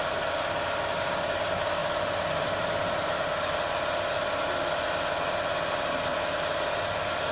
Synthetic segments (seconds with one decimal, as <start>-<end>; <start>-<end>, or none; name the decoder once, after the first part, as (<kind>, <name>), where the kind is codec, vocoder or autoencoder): 0.0-1.8 (vocoder, BigVGAN v2); 5.9-7.3